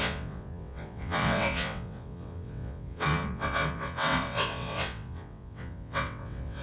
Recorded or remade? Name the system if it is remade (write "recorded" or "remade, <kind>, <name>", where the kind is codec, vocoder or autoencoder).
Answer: remade, vocoder, WaveNeXt